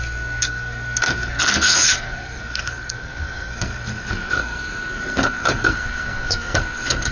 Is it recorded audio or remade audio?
remade